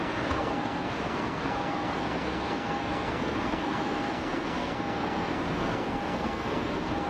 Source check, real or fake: fake